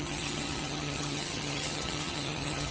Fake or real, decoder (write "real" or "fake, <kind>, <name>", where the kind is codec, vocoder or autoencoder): fake, vocoder, HiFi-GAN